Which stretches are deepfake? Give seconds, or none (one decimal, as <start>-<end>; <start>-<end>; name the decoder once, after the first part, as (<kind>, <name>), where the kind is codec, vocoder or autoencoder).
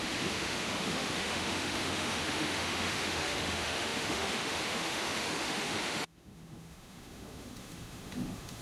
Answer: 0.0-8.6 (autoencoder, DAC-VAE)